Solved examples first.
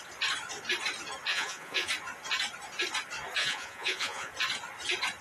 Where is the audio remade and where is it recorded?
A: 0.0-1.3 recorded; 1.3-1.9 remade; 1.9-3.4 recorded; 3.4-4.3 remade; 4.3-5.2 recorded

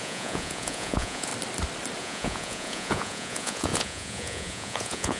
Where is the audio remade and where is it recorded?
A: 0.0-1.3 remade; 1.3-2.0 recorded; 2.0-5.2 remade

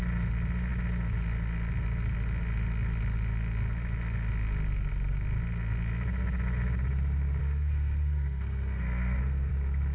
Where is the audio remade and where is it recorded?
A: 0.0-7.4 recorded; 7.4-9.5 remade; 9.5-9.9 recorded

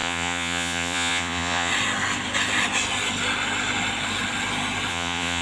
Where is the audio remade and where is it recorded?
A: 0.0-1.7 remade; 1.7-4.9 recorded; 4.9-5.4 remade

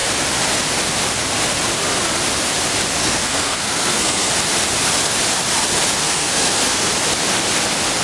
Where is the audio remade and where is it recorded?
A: 0.0-3.0 recorded; 3.0-4.3 remade; 4.3-6.0 recorded; 6.0-6.9 remade; 6.9-8.0 recorded

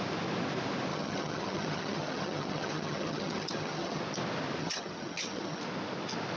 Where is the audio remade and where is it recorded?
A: 0.0-0.9 recorded; 0.9-4.0 remade; 4.0-4.6 recorded; 4.6-5.6 remade; 5.6-6.4 recorded